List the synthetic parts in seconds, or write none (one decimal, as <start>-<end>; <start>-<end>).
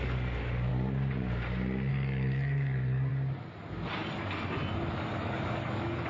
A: 0.0-0.7; 1.9-3.1; 4.9-6.1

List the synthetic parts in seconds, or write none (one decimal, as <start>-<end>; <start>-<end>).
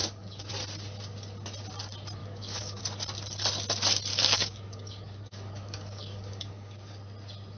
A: 0.0-0.5; 2.2-2.8; 4.1-6.9